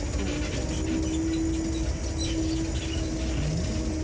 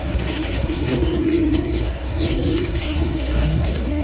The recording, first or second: first